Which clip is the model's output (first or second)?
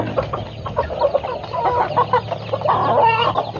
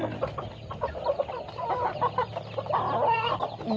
second